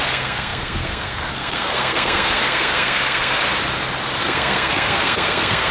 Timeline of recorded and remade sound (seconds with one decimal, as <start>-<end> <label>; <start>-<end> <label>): 0.0-3.4 remade; 3.4-4.2 recorded; 4.2-5.7 remade